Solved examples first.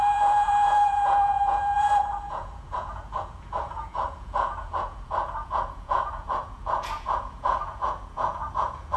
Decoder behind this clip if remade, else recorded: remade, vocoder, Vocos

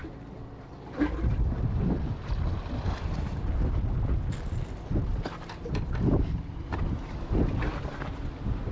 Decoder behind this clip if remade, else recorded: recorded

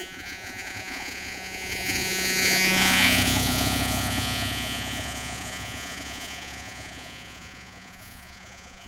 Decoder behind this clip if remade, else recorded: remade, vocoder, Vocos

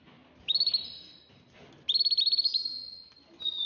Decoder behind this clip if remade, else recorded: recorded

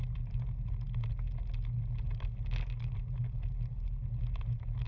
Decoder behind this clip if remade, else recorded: recorded